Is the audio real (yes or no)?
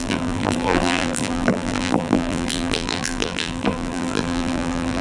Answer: no